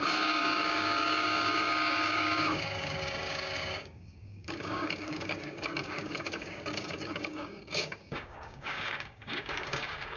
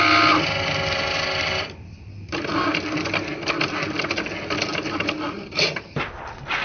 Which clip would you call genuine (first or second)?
second